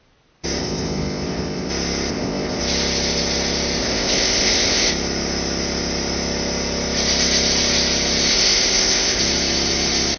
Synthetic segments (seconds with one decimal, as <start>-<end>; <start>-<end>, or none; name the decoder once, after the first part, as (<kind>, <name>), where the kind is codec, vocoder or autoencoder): 0.6-1.7 (codec, ZipCodec); 2.1-2.6; 3.8-4.9; 8.3-9.2